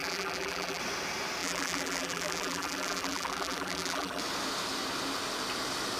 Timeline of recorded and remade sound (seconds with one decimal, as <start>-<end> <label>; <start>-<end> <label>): 0.0-0.8 remade; 0.8-1.4 recorded; 1.4-4.2 remade; 4.2-6.0 recorded